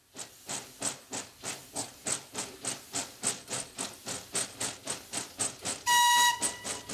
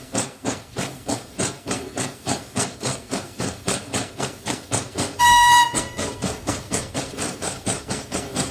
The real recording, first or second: first